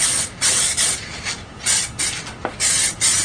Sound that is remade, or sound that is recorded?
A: recorded